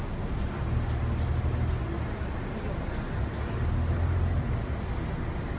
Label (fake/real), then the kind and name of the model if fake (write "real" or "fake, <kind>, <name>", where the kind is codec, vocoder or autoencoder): real